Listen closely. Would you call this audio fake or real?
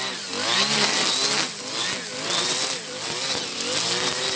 real